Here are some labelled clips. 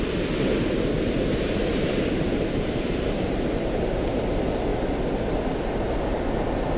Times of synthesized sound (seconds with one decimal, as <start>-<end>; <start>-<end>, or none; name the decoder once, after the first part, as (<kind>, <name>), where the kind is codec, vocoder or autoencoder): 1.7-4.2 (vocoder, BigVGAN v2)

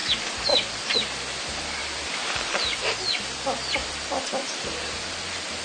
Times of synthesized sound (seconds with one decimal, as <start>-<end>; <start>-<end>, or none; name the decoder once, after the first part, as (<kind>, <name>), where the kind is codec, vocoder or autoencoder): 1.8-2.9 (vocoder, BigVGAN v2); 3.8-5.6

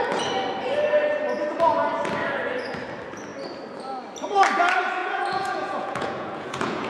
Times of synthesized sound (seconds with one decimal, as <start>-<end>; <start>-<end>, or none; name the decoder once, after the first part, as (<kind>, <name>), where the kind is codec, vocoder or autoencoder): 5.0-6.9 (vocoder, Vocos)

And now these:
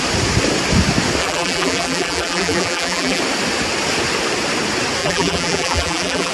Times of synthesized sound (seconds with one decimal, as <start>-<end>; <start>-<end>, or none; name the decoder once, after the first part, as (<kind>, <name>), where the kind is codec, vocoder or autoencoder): 1.2-3.2 (vocoder, BigVGAN v2); 5.0-6.3